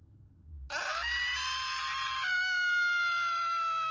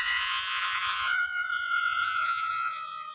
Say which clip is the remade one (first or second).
second